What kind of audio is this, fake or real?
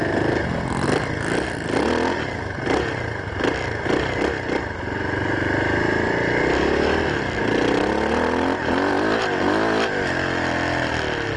real